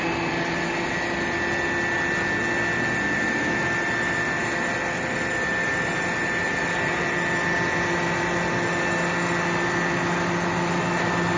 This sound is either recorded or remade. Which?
recorded